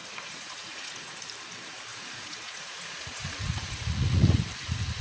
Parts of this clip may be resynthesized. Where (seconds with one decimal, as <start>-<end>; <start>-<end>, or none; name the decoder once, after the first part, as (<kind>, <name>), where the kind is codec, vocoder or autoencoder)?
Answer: 0.0-1.2 (vocoder, Vocos); 1.9-4.4